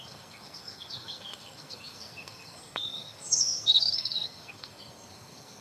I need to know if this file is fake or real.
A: fake